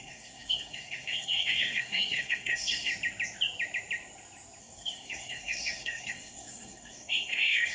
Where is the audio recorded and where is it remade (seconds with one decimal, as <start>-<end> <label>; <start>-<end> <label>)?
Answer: 0.0-2.9 remade; 2.9-4.6 recorded; 4.6-7.7 remade

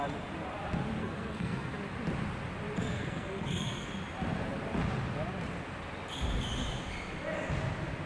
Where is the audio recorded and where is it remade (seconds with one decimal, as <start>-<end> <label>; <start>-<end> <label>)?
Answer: 0.0-1.0 recorded; 1.0-1.8 remade; 1.8-2.8 recorded; 2.8-3.9 remade; 3.9-8.1 recorded